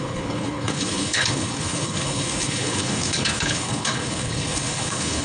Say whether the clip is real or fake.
fake